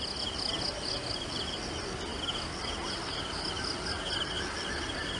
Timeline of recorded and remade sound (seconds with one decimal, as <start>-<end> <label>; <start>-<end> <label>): 0.0-5.2 recorded